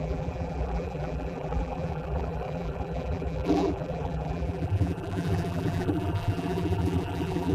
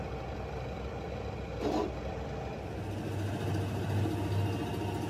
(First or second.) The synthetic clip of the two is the first